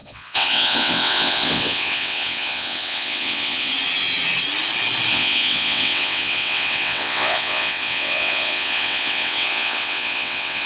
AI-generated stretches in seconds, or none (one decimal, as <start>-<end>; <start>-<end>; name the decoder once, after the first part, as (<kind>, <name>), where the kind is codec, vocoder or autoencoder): 0.0-3.7 (vocoder, WaveNeXt); 5.1-10.7